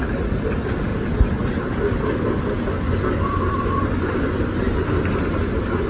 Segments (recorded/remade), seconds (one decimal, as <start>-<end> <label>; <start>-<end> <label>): 0.0-5.9 recorded